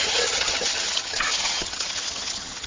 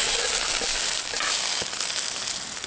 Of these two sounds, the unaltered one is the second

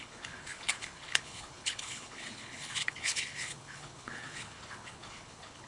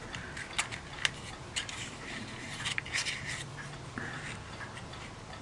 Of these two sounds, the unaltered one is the second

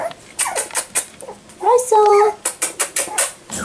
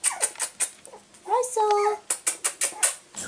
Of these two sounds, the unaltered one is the second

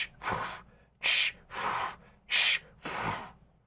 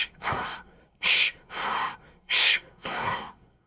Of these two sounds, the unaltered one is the first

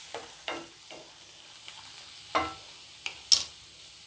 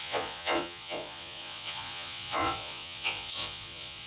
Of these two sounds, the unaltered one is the first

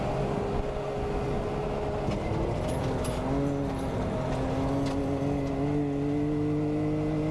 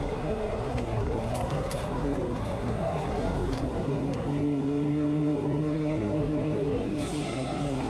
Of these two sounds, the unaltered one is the first